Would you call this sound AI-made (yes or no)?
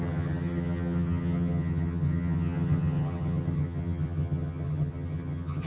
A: yes